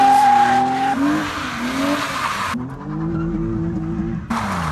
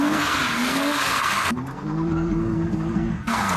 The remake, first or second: second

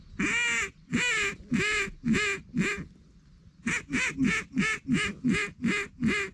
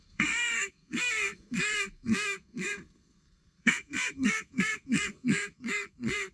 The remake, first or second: second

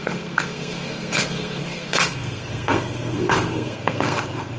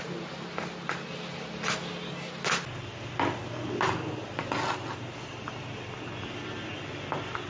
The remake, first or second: first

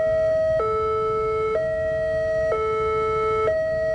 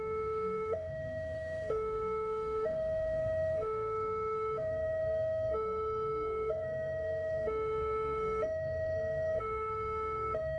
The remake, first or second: second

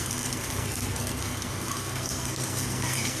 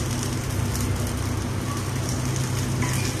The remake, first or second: first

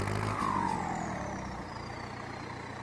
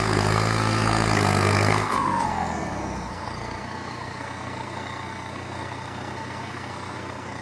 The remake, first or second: second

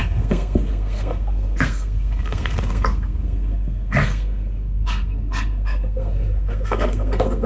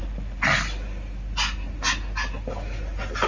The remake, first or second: first